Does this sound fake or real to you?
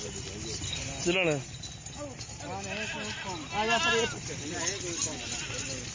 real